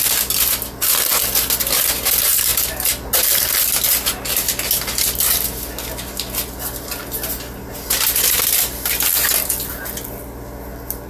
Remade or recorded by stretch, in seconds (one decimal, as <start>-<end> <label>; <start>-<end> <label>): 0.0-11.1 recorded